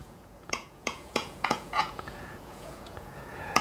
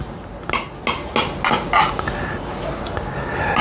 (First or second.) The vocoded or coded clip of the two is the first